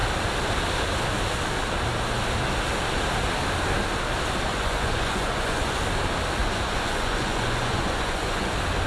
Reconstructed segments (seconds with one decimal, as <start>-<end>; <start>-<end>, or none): 4.5-5.8; 6.4-8.5